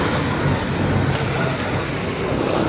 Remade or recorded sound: recorded